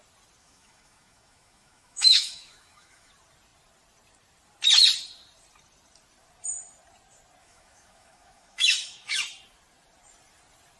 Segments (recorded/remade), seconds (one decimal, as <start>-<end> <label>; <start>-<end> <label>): 0.0-0.4 recorded; 0.4-3.1 remade; 3.1-7.4 recorded; 7.4-9.2 remade; 9.2-10.8 recorded